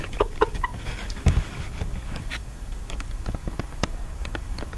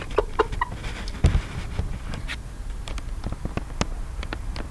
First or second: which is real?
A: second